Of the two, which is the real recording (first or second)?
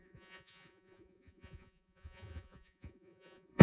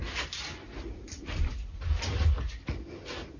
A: second